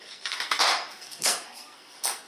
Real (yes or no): no